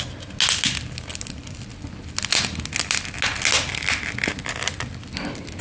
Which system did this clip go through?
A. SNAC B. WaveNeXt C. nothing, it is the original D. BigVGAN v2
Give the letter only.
C